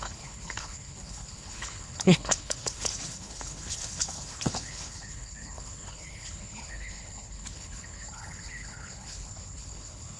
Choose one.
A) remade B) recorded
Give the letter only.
A